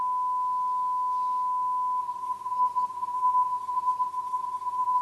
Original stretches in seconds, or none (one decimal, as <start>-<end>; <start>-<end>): 0.0-2.0